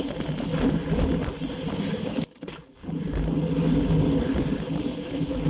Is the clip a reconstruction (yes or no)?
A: no